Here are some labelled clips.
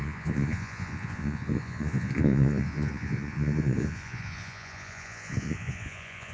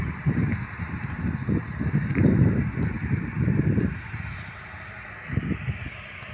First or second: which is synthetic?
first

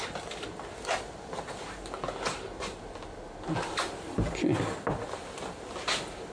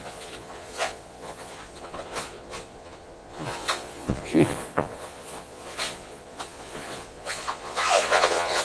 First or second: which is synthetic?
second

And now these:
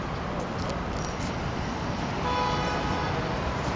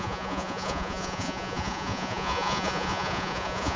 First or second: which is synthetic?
second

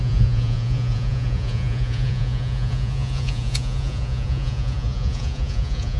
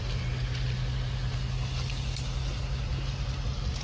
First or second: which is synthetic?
first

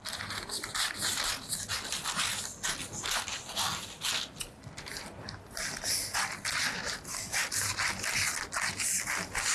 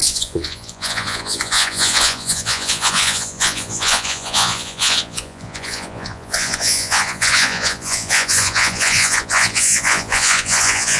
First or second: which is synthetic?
second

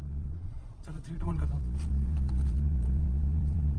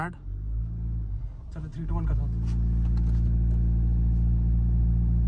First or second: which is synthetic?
first